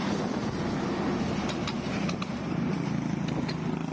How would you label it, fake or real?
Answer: real